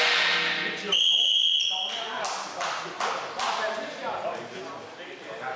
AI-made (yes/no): no